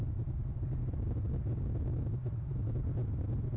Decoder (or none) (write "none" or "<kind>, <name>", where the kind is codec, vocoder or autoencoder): none